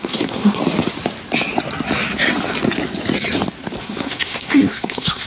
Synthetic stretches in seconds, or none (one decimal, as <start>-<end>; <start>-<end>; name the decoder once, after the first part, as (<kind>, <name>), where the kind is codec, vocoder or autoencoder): 0.0-0.6 (codec, SNAC); 3.8-5.3